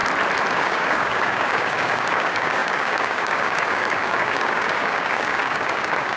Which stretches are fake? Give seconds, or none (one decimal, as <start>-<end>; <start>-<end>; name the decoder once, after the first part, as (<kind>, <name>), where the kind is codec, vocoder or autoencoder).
0.5-6.2 (codec, DAC)